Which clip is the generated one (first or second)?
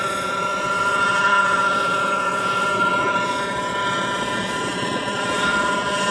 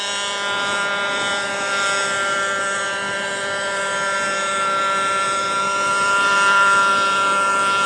first